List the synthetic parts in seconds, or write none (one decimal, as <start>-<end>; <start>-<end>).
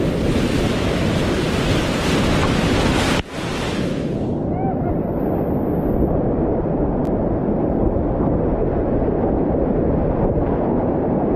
none